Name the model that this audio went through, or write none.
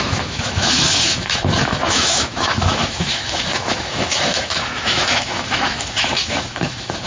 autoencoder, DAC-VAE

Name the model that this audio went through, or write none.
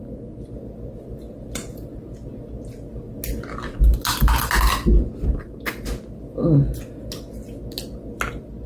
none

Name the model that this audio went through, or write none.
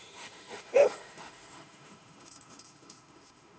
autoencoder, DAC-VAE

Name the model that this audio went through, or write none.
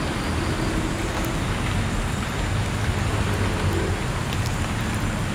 none